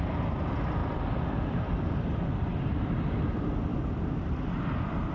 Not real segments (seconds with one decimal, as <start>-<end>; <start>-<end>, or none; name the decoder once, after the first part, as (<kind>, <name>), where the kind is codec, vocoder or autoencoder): none